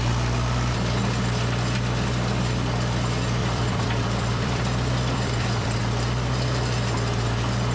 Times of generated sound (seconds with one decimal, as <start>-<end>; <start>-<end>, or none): 3.4-5.8